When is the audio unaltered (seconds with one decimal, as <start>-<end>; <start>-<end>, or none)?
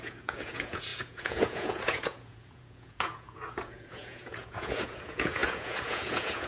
none